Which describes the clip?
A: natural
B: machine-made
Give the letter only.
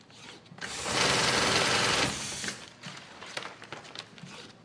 A